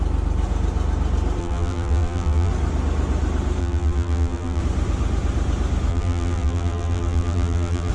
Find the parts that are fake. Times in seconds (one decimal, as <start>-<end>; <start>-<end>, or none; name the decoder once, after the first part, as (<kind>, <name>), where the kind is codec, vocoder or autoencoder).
1.4-2.5 (vocoder, BigVGAN v2); 3.6-4.6; 5.9-7.9